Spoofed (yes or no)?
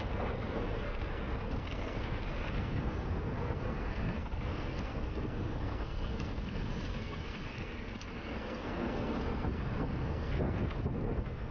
yes